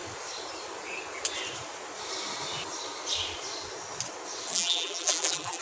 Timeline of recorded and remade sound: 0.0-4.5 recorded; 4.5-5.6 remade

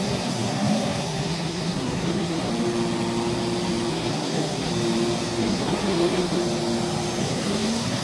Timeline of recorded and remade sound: 0.0-2.5 remade; 2.5-3.9 recorded; 3.9-4.7 remade; 4.7-5.4 recorded; 5.4-6.4 remade; 6.4-7.2 recorded; 7.2-8.0 remade

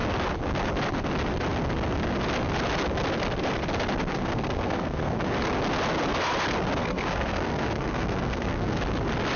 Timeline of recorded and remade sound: 0.0-4.1 recorded; 4.1-5.3 remade; 5.3-6.8 recorded; 6.8-8.8 remade; 8.8-9.4 recorded

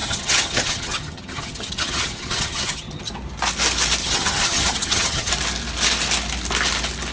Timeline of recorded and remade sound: 0.0-3.1 remade; 3.1-4.0 recorded; 4.0-5.3 remade; 5.3-7.1 recorded

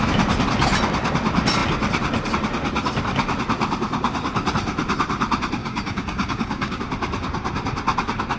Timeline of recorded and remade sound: 0.0-5.6 recorded; 5.6-6.8 remade; 6.8-8.4 recorded